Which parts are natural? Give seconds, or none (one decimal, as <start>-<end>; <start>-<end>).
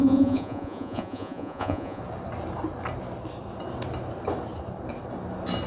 2.0-5.7